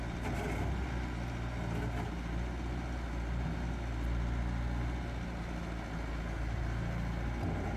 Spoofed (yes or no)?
no